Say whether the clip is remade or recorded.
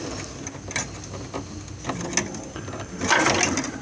recorded